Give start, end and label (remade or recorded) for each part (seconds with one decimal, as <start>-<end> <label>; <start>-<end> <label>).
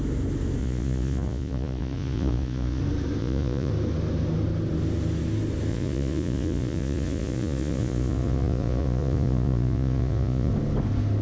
0.0-0.6 recorded; 0.6-2.8 remade; 2.8-3.2 recorded; 3.2-3.7 remade; 3.7-5.7 recorded; 5.7-10.5 remade; 10.5-11.2 recorded